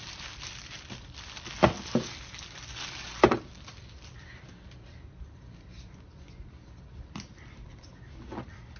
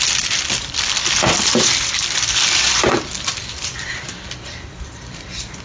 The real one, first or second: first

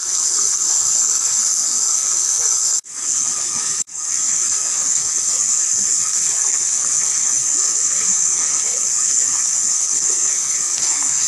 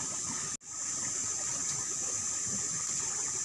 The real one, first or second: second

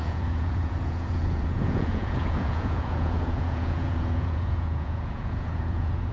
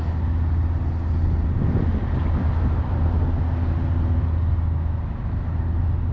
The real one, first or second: second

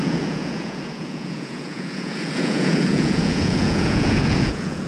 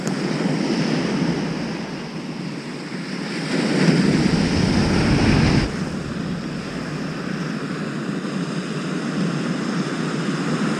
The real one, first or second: second